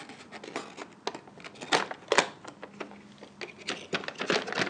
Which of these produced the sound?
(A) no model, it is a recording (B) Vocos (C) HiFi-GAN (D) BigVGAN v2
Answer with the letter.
A